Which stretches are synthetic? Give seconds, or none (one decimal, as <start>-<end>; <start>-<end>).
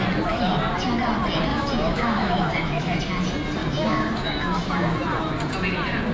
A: 1.5-3.0; 3.6-5.3